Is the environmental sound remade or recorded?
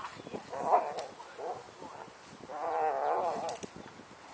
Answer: recorded